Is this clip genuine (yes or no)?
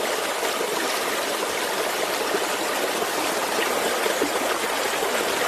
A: yes